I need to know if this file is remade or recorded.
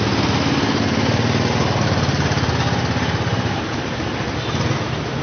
recorded